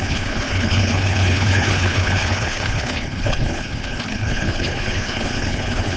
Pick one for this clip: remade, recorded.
remade